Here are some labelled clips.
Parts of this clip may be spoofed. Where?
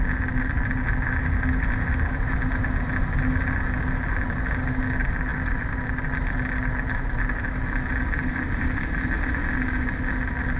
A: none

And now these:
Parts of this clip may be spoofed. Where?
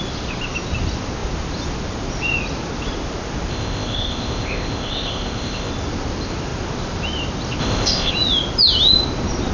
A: 3.5-5.7 (codec, ZipCodec); 7.6-8.1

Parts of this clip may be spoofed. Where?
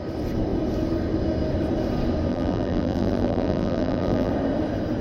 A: 2.3-4.3 (vocoder, BigVGAN v2)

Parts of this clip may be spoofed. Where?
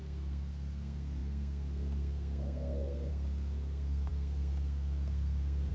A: 0.0-5.7 (codec, SNAC)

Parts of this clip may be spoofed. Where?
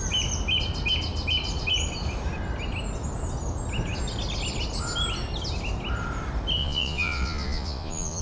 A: 6.6-8.2 (vocoder, Vocos)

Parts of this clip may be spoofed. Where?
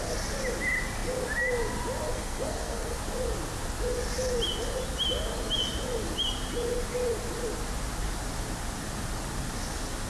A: 2.1-3.0 (codec, SNAC)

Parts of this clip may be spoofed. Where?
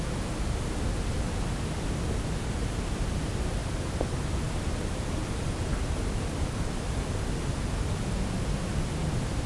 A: none